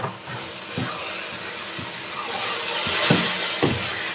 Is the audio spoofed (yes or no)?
no